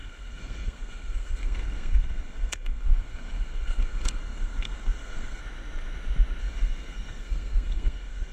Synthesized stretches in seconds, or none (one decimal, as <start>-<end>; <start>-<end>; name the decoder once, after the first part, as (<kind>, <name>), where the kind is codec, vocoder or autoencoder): 0.0-5.4 (codec, SNAC); 6.4-8.3